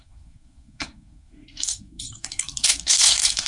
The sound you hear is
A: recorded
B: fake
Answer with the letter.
B